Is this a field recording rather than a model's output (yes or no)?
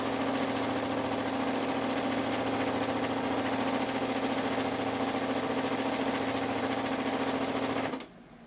yes